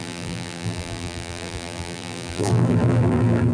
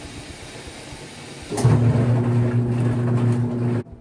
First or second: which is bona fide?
second